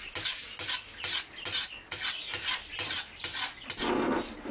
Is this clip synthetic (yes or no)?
no